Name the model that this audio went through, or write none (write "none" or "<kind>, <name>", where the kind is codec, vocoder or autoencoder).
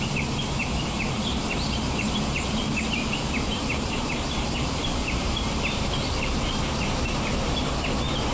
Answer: vocoder, BigVGAN v2